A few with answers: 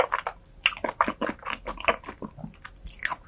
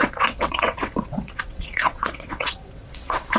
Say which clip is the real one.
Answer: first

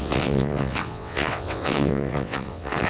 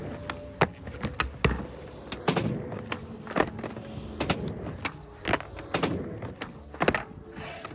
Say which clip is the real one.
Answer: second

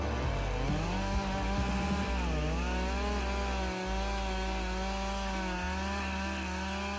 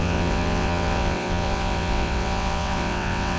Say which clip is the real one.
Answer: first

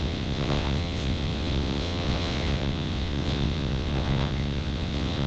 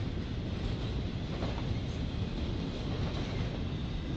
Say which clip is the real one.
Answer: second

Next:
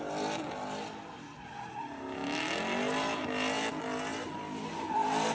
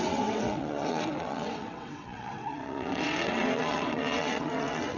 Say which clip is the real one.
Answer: first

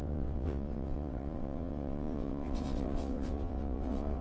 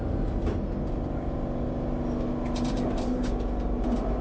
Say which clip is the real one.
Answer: second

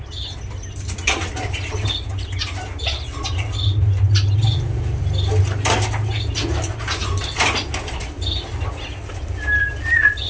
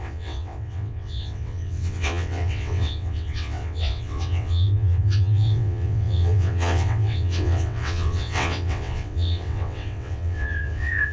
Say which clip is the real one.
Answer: first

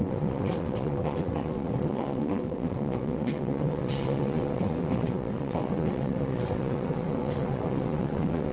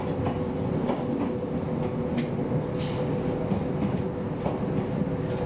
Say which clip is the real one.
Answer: second